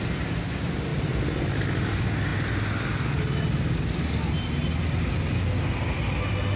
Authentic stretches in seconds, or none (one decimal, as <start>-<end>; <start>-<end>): 0.0-6.6